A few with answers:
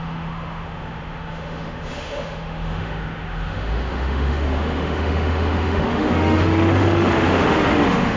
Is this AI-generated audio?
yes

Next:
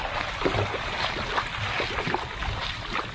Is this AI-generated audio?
no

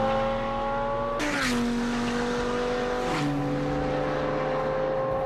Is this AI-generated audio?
no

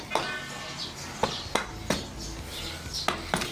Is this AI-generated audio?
no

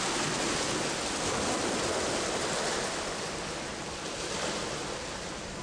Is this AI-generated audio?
no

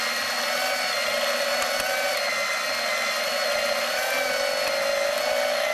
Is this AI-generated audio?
no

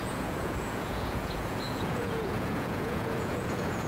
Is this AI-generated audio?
yes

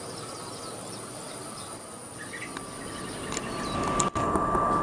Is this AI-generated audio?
no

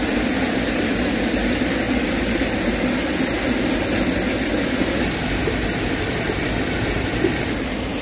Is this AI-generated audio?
no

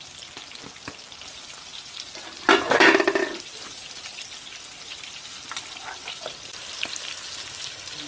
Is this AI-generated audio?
no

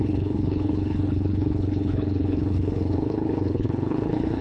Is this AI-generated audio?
yes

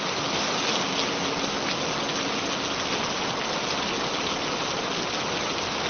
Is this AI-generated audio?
no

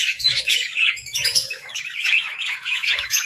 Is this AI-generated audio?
yes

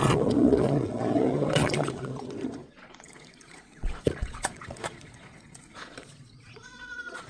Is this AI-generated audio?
yes